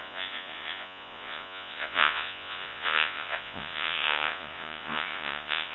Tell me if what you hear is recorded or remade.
remade